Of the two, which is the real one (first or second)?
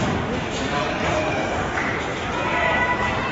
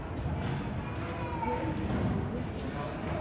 second